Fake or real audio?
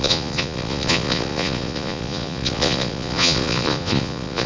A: fake